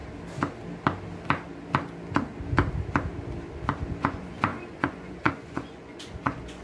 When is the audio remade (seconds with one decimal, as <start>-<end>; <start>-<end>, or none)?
4.0-6.6